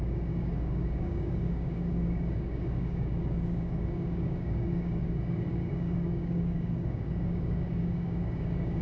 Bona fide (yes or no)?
no